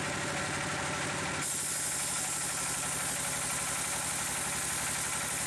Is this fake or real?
real